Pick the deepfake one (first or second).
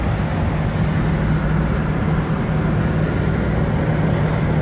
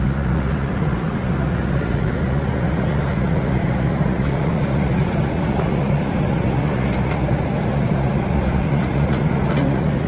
second